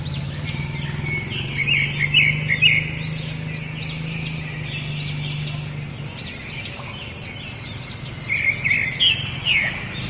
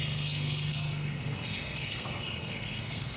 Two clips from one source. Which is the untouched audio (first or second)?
first